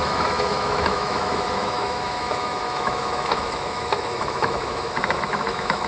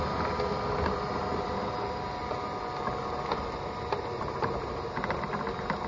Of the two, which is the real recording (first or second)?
second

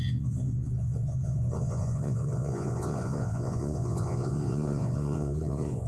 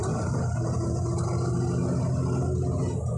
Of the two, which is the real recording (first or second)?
second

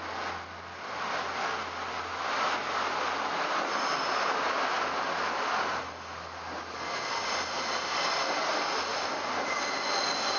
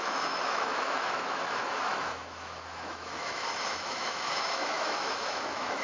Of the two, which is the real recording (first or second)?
first